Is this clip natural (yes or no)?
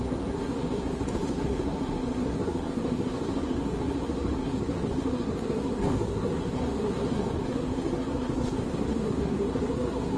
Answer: no